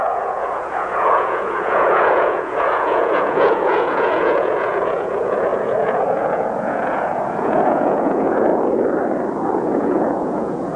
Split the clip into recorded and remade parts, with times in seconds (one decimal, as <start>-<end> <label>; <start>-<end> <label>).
0.0-8.5 remade; 8.5-9.6 recorded; 9.6-10.8 remade